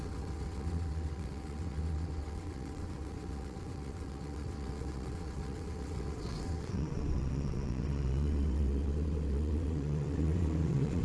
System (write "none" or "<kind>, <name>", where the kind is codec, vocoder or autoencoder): vocoder, WaveNeXt